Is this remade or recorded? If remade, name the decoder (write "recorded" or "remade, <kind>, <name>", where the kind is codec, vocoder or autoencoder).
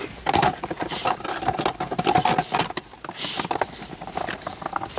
recorded